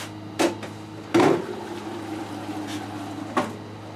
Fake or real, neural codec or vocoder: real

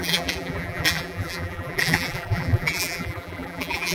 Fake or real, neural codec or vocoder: fake, vocoder, BigVGAN v2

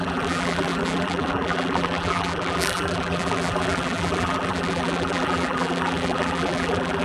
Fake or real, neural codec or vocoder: fake, vocoder, BigVGAN v2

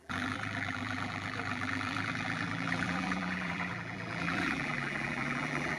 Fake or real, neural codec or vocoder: fake, vocoder, BigVGAN v2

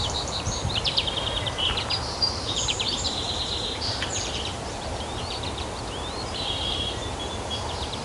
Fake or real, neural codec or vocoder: fake, vocoder, BigVGAN v2